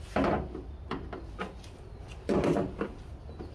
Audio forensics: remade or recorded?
recorded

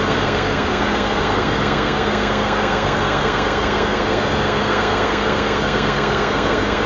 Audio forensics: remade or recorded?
remade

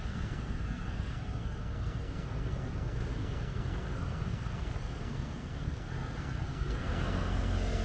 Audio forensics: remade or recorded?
remade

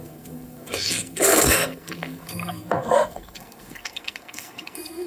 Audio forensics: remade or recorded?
remade